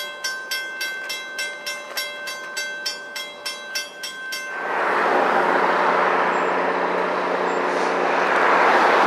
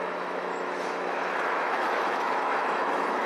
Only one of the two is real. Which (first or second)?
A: first